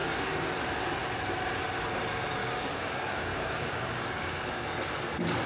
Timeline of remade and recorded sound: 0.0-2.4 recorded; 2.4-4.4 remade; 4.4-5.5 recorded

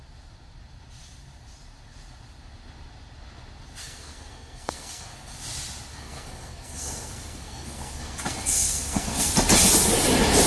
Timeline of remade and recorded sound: 0.0-3.8 recorded; 3.8-5.4 remade; 5.4-5.9 recorded; 5.9-9.3 remade; 9.3-10.5 recorded

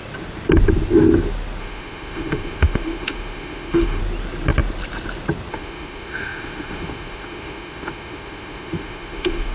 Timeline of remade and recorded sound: 0.0-1.6 recorded; 1.6-4.0 remade; 4.0-5.5 recorded; 5.5-9.5 remade